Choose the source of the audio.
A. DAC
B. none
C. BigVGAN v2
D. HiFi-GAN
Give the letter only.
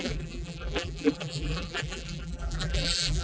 C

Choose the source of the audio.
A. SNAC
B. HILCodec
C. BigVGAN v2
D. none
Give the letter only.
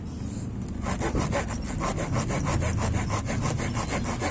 D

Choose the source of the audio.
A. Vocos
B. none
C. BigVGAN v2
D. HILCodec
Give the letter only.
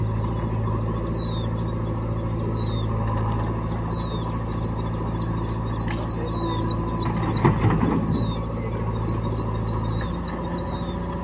B